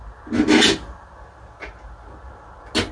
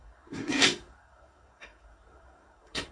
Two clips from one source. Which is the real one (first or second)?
first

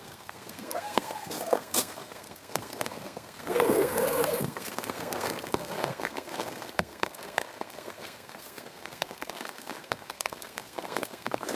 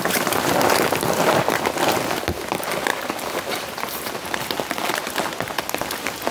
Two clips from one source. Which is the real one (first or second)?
second